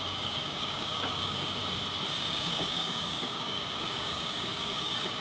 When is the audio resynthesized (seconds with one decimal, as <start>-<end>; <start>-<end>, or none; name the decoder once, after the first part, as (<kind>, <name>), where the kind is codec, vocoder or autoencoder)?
0.0-1.6 (codec, DAC); 2.2-5.2